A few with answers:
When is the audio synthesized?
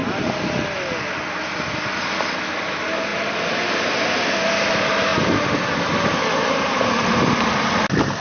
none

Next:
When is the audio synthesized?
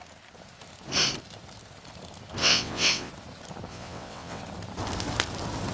2.4-3.1 (vocoder, WaveNeXt); 3.7-4.4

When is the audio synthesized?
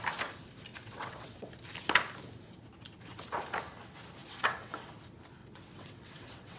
0.7-1.5 (vocoder, WaveNeXt); 4.2-4.9; 5.4-6.6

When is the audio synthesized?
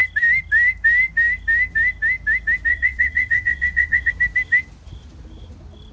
2.7-4.1 (vocoder, WaveNeXt)